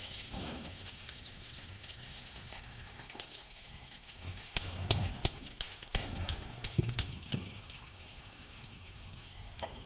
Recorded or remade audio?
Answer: remade